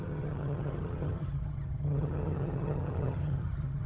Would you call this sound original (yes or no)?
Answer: no